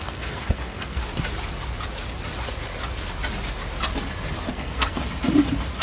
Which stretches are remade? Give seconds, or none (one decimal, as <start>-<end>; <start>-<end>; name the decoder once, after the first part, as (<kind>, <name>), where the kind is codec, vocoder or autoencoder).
0.0-1.0 (codec, SNAC); 4.5-5.0